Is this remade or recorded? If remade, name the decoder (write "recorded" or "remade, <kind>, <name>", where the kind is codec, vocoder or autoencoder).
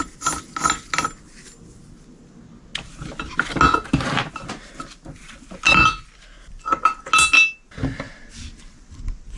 recorded